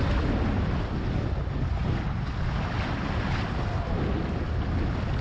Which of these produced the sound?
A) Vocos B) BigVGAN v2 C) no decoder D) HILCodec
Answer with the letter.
C